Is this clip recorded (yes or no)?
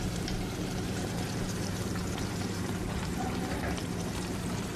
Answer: no